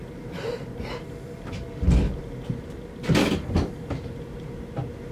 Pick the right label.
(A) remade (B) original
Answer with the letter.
B